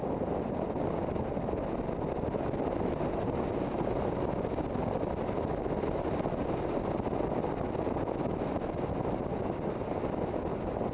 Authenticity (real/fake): real